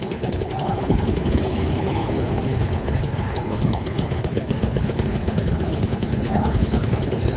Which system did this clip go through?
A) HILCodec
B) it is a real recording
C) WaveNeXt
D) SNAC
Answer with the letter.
A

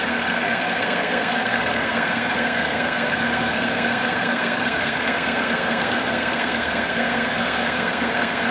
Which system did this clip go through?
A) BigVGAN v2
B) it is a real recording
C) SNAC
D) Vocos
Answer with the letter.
C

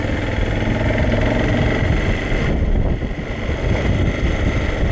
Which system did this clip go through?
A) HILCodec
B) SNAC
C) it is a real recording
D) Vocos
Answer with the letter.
C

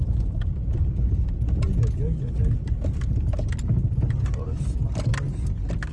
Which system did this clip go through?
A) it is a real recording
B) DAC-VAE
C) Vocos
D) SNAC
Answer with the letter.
A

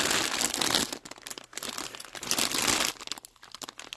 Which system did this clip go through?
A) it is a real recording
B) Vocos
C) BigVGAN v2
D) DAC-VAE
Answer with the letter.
A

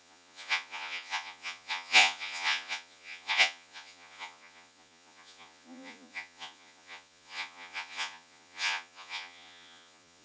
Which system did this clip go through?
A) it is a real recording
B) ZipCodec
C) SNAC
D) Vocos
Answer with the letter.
D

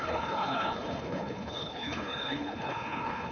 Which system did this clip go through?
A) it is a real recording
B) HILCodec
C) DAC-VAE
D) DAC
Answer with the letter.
B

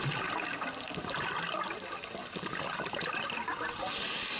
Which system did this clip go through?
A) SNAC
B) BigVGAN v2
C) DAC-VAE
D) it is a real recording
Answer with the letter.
D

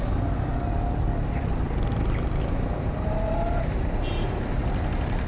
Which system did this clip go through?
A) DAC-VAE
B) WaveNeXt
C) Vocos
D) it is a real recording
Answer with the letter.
D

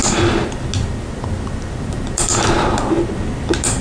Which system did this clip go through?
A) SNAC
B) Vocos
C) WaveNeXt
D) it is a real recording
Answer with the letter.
D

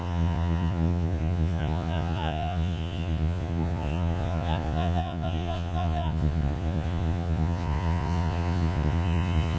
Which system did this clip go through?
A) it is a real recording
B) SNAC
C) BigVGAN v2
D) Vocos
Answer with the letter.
D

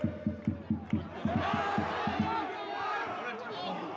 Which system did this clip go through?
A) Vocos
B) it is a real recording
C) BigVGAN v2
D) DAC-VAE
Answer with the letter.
B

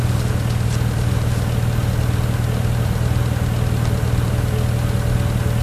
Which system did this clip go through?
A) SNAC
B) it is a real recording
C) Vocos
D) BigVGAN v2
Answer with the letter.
B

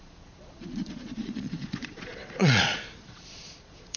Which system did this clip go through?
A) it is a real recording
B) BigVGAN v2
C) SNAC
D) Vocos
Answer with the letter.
D